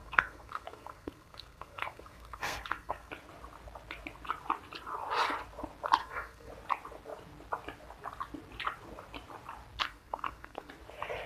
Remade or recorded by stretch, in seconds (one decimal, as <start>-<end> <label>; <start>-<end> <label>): 0.0-3.1 remade; 3.1-6.0 recorded; 6.0-6.5 remade; 6.5-9.8 recorded; 9.8-10.7 remade; 10.7-11.3 recorded